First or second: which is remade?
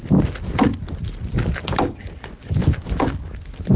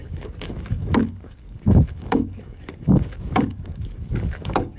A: second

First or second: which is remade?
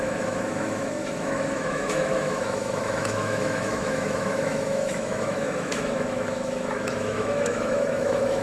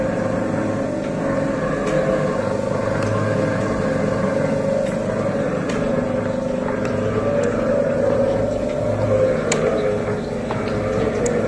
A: first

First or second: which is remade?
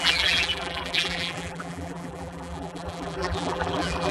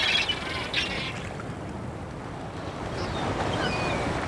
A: first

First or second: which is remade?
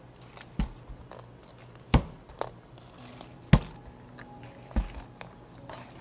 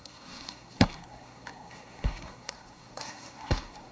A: second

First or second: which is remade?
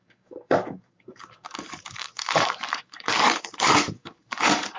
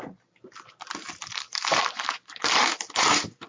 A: first